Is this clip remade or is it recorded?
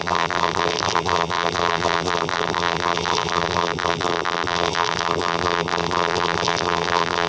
remade